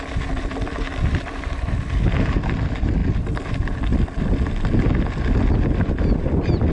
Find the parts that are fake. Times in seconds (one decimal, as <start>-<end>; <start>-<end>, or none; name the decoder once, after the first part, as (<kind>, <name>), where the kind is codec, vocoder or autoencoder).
none